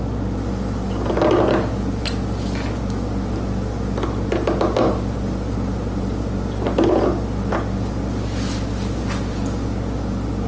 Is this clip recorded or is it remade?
recorded